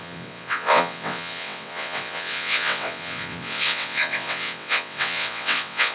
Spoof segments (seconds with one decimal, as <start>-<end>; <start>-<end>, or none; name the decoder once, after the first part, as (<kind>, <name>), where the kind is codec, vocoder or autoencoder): 0.0-5.9 (vocoder, WaveNeXt)